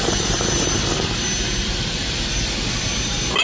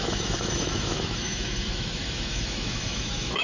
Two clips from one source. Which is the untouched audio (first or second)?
first